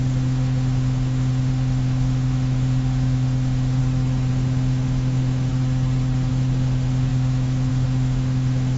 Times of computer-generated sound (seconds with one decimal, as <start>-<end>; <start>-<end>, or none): 0.0-3.8; 4.3-5.5; 6.3-8.8